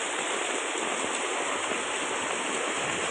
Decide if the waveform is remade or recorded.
recorded